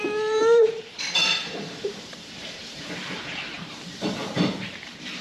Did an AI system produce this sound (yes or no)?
yes